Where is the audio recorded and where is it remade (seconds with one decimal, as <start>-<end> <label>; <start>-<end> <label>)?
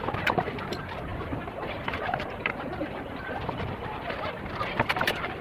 0.0-5.4 remade